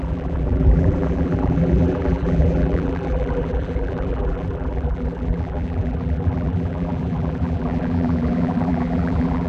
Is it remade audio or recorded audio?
remade